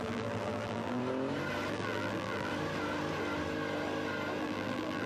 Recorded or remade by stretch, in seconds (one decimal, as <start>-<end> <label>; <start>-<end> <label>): 0.0-1.0 remade; 1.0-1.7 recorded; 1.7-2.5 remade; 2.5-4.4 recorded; 4.4-5.1 remade